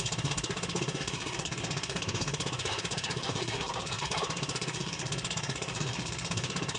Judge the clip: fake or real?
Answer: fake